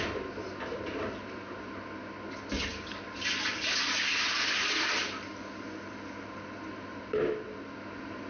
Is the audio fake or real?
real